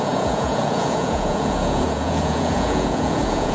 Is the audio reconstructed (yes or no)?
yes